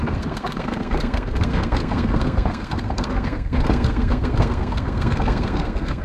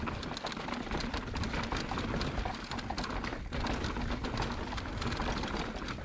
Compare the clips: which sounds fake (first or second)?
first